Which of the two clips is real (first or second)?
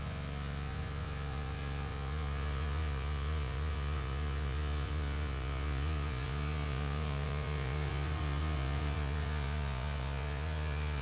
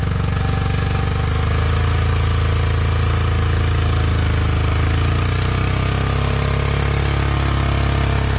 second